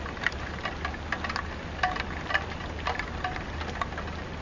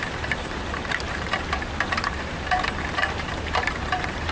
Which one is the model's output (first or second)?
second